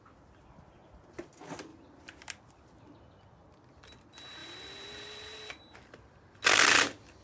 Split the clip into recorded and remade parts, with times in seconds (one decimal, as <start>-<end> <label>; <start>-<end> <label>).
0.0-1.7 recorded; 1.7-2.8 remade; 2.8-4.4 recorded; 4.4-6.8 remade; 6.8-7.2 recorded